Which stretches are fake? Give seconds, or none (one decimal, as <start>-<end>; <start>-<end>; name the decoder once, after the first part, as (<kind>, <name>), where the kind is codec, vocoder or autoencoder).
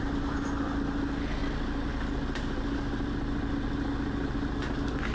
none